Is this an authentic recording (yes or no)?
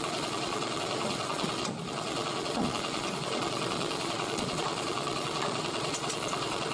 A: no